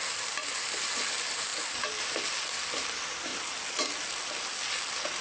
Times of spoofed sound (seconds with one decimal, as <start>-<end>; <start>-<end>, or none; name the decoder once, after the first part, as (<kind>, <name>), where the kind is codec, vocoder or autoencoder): 0.0-0.7 (vocoder, BigVGAN v2)